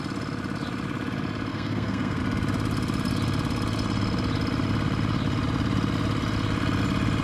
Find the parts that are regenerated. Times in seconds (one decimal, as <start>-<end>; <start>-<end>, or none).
1.5-2.2